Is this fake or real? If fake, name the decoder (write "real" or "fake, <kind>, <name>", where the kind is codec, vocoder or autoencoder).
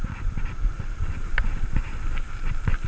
fake, vocoder, BigVGAN v2